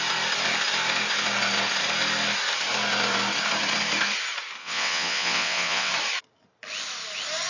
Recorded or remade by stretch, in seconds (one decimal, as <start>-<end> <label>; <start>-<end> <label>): 0.0-4.6 recorded; 4.6-5.9 remade; 5.9-7.5 recorded